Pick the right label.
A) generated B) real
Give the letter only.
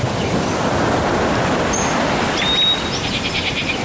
B